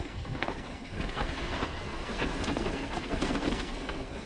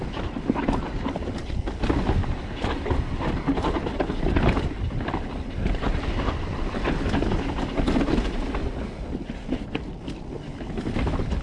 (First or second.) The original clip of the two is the second